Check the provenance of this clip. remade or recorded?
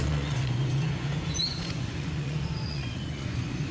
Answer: remade